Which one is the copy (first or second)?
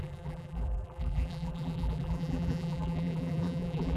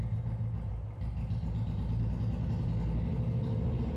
first